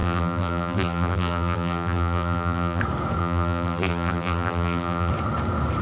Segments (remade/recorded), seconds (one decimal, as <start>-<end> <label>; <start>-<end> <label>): 0.0-2.8 remade; 2.8-3.2 recorded; 3.2-5.1 remade; 5.1-5.8 recorded